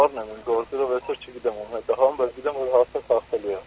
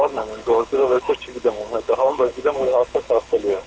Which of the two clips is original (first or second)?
first